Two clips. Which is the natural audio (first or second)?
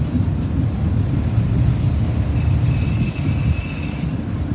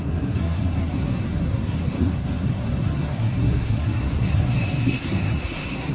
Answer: first